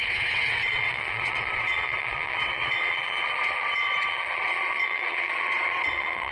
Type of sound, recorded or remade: remade